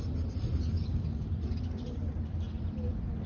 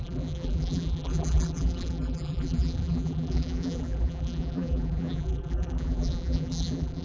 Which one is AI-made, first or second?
second